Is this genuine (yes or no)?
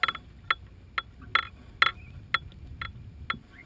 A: yes